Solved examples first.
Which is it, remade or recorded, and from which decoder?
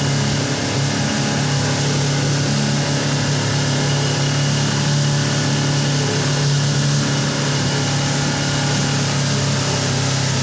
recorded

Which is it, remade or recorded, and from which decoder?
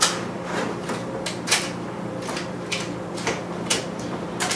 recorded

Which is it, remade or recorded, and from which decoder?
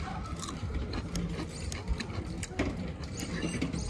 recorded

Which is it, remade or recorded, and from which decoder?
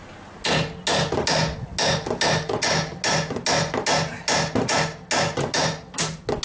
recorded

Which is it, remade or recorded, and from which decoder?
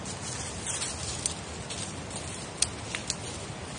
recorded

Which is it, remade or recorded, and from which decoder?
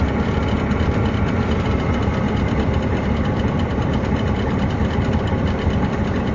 recorded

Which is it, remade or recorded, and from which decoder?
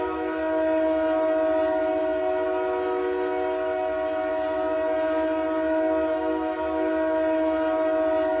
recorded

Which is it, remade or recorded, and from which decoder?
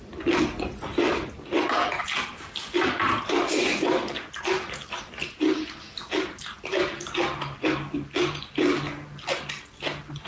recorded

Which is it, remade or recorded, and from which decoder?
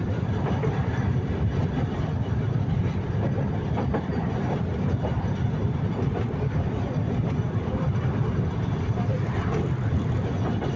remade, vocoder, BigVGAN v2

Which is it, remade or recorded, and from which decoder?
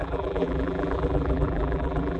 remade, vocoder, BigVGAN v2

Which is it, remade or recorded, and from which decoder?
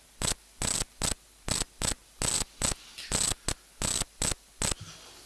recorded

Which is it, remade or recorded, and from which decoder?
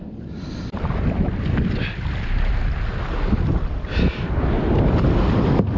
recorded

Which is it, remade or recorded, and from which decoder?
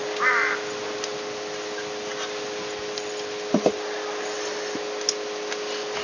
recorded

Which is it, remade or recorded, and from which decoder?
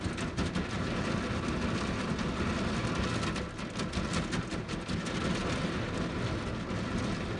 recorded